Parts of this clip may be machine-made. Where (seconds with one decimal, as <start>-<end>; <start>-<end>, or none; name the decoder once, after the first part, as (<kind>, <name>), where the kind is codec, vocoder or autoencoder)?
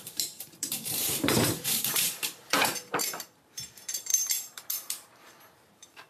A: 0.0-6.1 (vocoder, BigVGAN v2)